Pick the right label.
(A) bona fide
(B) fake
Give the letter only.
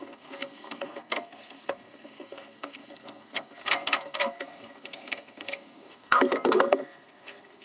B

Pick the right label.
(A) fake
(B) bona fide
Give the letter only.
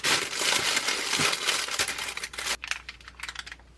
B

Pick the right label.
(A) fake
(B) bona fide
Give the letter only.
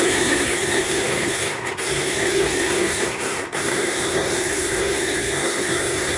A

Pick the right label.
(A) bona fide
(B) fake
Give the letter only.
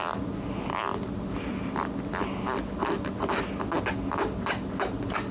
A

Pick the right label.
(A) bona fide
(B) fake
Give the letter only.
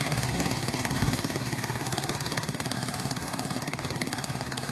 B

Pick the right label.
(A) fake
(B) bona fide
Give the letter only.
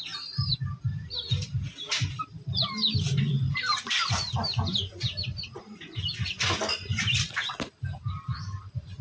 B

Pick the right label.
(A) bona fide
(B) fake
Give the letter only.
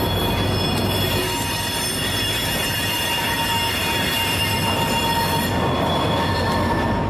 A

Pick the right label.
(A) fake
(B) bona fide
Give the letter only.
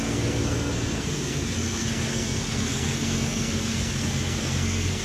A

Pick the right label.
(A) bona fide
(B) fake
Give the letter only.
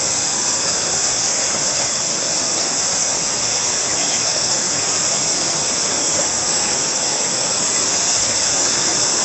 B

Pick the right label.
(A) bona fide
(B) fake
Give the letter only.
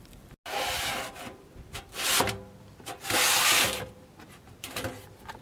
A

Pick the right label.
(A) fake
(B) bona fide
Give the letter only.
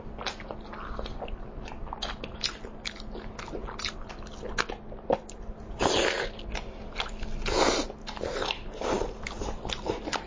B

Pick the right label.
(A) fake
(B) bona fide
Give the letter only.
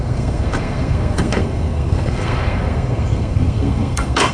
A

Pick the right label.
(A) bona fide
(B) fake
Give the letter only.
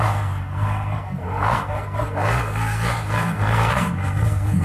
B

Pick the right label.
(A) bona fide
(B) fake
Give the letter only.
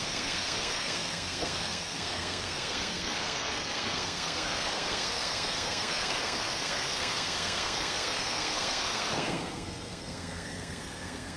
B